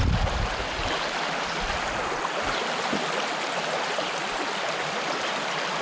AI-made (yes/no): no